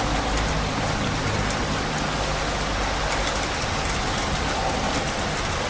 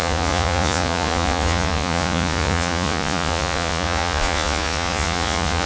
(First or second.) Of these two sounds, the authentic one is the first